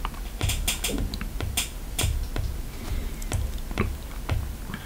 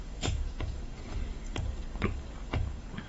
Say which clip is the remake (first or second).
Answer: second